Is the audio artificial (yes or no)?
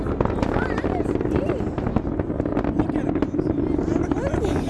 no